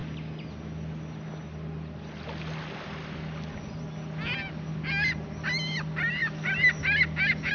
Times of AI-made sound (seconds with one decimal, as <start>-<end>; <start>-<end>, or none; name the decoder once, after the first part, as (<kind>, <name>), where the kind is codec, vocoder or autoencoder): none